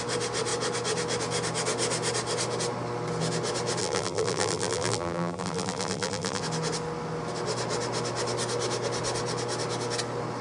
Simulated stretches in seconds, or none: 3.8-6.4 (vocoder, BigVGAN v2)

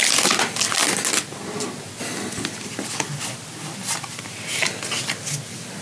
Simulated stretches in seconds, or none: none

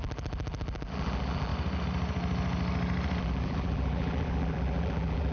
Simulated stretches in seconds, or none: 0.0-1.5 (vocoder, BigVGAN v2); 3.2-5.3

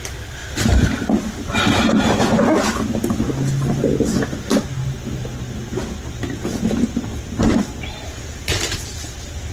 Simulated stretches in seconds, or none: none

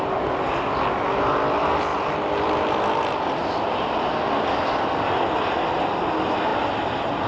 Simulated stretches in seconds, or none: 1.9-4.0 (vocoder, BigVGAN v2); 6.5-7.3